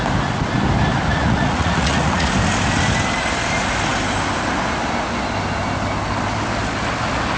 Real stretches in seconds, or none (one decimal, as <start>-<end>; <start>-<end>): 0.0-1.1; 2.3-7.4